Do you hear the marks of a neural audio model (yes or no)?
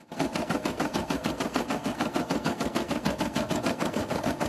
yes